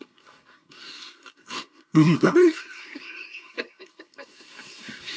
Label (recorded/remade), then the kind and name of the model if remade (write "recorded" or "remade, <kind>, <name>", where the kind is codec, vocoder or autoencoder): remade, codec, SNAC